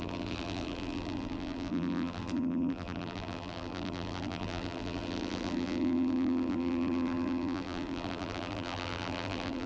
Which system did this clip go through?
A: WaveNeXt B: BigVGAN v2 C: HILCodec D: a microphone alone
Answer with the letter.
B